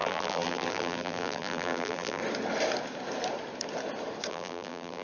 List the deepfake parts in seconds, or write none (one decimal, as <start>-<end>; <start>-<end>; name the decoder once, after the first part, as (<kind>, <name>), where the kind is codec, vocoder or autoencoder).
0.0-2.2 (vocoder, BigVGAN v2); 4.3-5.0